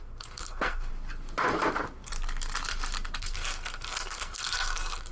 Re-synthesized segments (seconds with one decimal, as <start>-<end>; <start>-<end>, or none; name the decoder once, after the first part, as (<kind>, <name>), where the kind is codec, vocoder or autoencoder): 0.0-0.9 (codec, SNAC); 3.2-5.1